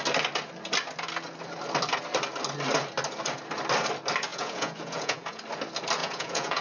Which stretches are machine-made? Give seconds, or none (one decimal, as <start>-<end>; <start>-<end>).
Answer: 4.3-5.4; 6.0-6.6